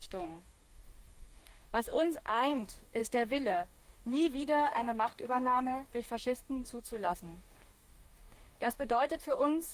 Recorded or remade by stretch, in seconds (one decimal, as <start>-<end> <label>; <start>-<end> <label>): 0.0-9.7 remade